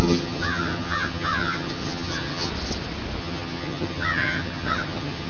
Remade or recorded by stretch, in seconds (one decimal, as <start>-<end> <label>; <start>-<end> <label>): 0.0-2.5 remade; 2.5-3.2 recorded; 3.2-5.3 remade

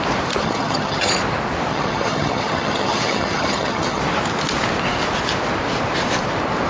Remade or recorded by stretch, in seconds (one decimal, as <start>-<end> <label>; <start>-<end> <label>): 0.0-0.4 recorded; 0.4-1.1 remade; 1.1-1.7 recorded; 1.7-4.0 remade; 4.0-6.7 recorded

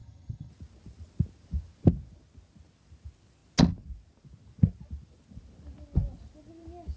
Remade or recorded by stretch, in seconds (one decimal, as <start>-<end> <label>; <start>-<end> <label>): 0.0-0.5 remade; 0.5-7.0 recorded

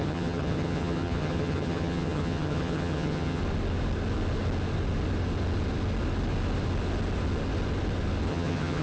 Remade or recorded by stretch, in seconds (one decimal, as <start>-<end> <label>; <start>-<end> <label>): 0.0-3.4 remade; 3.4-8.3 recorded; 8.3-8.8 remade